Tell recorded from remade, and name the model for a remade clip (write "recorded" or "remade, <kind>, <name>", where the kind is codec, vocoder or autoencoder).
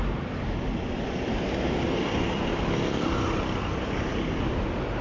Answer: recorded